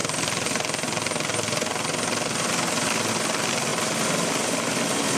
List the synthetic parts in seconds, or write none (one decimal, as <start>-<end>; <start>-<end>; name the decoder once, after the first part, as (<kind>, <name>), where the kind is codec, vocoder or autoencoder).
none